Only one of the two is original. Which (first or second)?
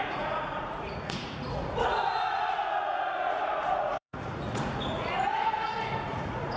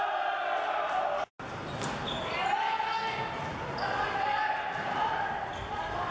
second